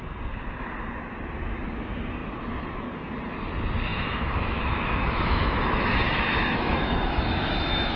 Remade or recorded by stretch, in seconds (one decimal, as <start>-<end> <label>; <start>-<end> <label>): 0.0-3.9 recorded; 3.9-8.0 remade